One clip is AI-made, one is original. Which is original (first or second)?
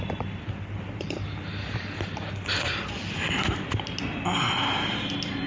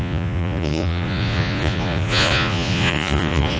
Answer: first